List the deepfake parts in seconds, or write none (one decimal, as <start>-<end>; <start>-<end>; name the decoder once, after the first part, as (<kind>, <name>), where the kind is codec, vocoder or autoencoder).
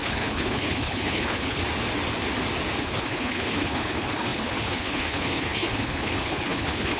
0.0-1.6 (codec, HILCodec); 2.8-7.0